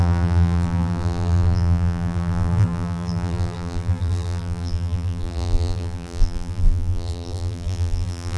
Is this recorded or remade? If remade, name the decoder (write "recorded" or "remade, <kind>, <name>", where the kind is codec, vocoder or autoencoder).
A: remade, vocoder, BigVGAN v2